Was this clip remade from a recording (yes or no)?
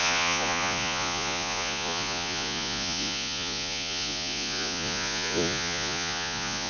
yes